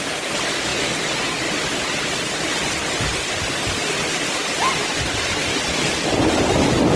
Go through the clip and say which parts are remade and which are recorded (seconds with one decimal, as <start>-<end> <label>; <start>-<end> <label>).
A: 0.0-7.0 recorded